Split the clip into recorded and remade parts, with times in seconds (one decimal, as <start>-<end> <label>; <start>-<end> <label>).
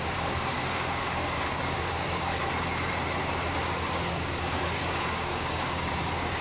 0.0-2.3 remade; 2.3-3.6 recorded; 3.6-6.4 remade